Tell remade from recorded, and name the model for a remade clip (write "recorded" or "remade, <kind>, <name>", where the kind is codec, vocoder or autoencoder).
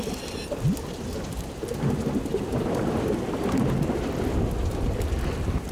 recorded